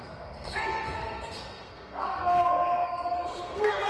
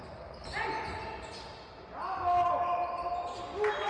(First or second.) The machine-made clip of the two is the first